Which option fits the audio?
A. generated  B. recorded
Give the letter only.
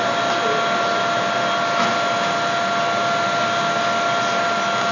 B